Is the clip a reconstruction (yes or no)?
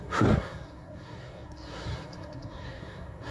yes